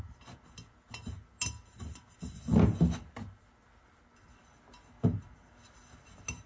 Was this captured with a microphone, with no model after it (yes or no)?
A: yes